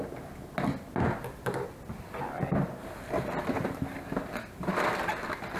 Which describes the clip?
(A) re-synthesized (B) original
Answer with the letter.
B